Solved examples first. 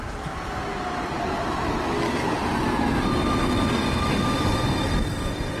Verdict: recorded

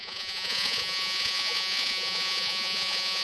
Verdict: remade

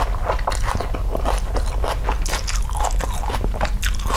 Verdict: recorded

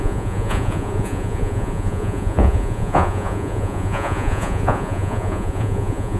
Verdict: remade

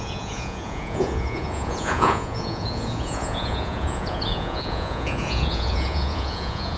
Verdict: remade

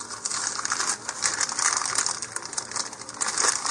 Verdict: recorded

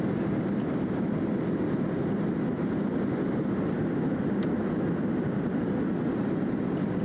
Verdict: recorded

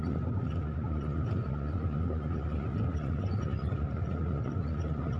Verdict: remade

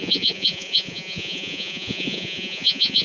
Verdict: remade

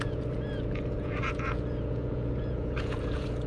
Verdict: remade